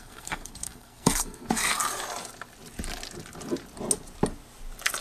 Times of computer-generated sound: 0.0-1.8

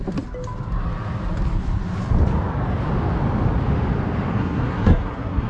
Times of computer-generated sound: 4.3-5.5

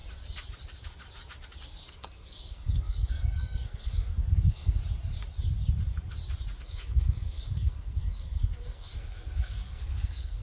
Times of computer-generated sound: 1.9-4.8; 6.6-10.4

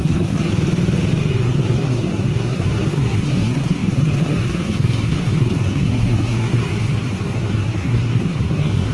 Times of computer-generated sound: 0.0-0.5; 1.2-8.9

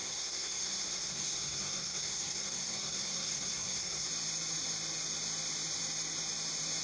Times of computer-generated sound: 0.0-4.1

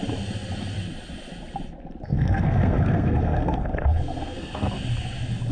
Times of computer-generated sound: 2.1-4.7